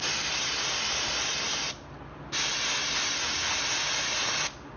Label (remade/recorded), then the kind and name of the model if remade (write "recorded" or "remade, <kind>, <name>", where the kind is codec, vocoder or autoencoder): recorded